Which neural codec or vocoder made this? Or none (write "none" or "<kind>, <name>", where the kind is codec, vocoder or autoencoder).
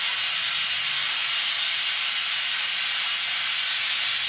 none